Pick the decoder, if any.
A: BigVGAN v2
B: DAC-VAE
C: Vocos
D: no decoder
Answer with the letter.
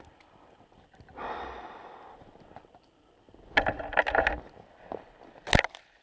D